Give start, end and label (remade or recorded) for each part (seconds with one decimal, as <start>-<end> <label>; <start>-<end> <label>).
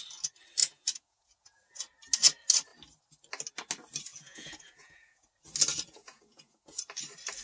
0.0-0.6 recorded; 0.6-1.6 remade; 1.6-4.1 recorded; 4.1-5.3 remade; 5.3-5.7 recorded; 5.7-6.8 remade; 6.8-7.4 recorded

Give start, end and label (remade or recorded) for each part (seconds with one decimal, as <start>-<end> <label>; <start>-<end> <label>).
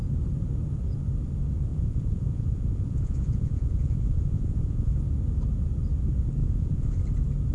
0.0-1.7 recorded; 1.7-4.9 remade; 4.9-6.4 recorded; 6.4-7.0 remade; 7.0-7.5 recorded